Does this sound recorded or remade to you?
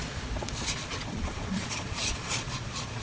remade